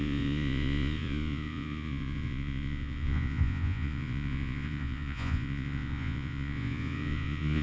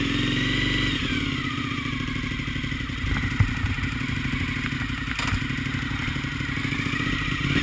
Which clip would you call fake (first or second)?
first